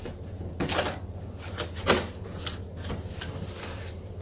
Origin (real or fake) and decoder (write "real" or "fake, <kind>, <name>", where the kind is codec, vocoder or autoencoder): real